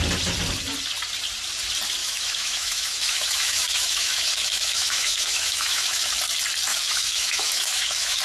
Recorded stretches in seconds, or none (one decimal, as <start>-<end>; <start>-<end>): 0.0-2.0; 6.1-6.7